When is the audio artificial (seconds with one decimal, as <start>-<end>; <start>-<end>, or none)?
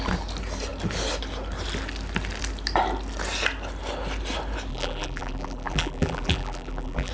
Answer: 4.7-7.1